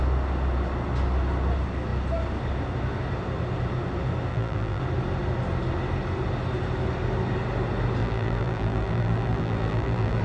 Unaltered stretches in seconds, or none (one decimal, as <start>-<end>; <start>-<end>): 0.0-4.3; 4.8-8.0